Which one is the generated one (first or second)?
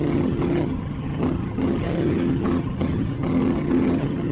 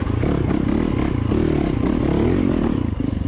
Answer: first